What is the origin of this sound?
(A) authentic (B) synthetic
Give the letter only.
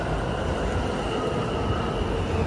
A